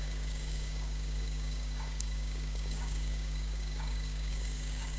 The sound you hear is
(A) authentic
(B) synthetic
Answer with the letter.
B